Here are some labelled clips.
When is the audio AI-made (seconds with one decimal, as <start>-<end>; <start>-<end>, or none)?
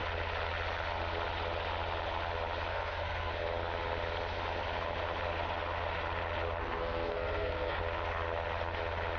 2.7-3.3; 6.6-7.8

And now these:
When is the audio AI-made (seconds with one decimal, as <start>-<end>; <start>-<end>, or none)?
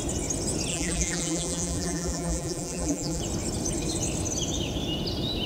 0.7-3.2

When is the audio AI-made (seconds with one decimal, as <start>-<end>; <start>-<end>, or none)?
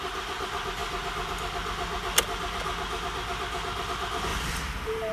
4.3-5.1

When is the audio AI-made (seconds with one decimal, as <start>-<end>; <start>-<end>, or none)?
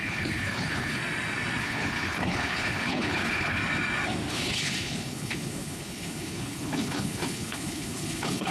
0.0-1.0; 1.6-3.6; 4.3-8.5